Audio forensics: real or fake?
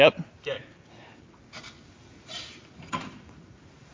fake